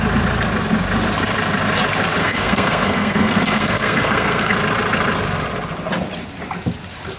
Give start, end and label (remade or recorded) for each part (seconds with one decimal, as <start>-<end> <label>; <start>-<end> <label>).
0.0-2.2 recorded; 2.2-4.5 remade; 4.5-7.2 recorded